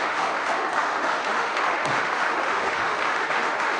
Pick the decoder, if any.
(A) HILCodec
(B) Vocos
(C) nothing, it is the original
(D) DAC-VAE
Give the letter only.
D